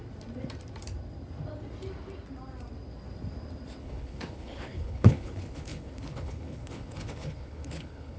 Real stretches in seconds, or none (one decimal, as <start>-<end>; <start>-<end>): 0.0-3.8